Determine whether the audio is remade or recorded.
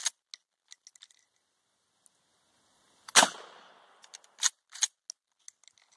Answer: recorded